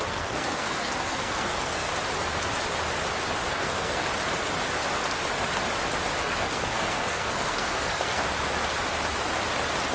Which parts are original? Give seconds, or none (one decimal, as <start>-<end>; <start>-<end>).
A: 1.9-3.5; 4.0-6.2; 8.2-9.9